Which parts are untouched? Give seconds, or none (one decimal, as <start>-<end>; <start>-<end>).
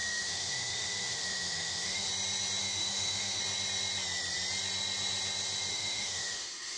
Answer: 2.1-2.6; 3.4-5.7